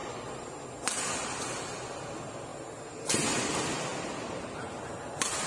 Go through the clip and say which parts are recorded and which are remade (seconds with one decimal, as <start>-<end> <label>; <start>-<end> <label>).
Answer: 0.0-5.5 recorded